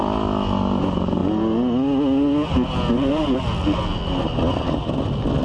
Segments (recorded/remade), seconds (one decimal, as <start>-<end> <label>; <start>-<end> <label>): 0.0-5.4 recorded